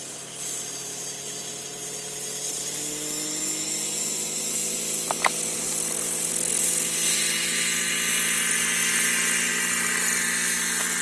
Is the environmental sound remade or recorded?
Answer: recorded